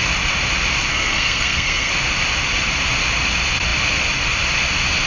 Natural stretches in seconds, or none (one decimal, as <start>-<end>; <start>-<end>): 0.0-0.9; 1.9-5.1